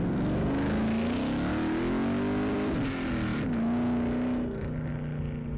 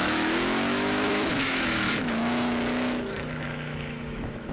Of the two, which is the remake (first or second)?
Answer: second